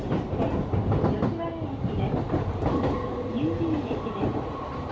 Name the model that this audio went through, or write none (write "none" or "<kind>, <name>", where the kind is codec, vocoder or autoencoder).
none